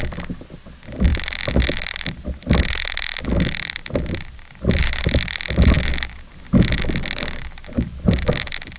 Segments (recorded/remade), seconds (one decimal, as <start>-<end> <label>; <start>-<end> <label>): 0.0-8.8 recorded